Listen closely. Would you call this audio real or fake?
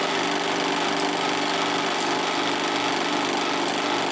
real